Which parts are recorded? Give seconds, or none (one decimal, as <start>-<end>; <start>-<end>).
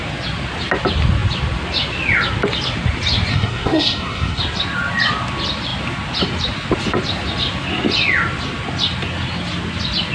0.0-3.3; 4.4-10.1